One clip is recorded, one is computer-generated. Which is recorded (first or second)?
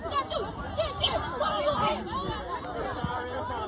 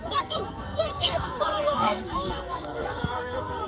first